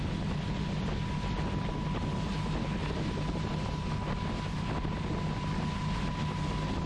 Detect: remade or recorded recorded